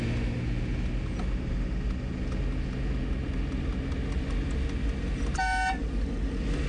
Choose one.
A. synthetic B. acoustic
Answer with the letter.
B